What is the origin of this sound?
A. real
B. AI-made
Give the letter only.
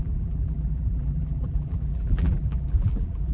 B